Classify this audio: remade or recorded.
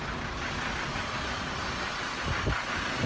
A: recorded